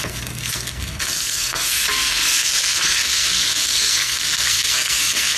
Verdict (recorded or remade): remade